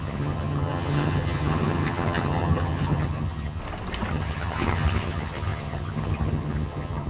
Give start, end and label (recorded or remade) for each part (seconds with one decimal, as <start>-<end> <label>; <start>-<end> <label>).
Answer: 0.0-3.6 remade; 3.6-4.1 recorded; 4.1-7.1 remade